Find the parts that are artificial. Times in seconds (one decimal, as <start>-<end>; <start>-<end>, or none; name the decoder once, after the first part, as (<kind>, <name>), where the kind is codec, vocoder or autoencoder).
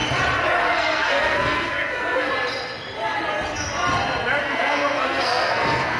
0.6-2.3 (codec, SNAC); 4.4-6.0